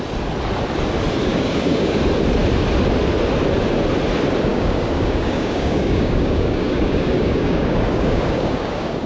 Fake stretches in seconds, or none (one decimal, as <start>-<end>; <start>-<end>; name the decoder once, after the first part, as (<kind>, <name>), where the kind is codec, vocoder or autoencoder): 1.3-2.0 (codec, DAC); 4.5-9.1